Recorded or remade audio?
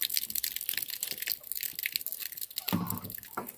recorded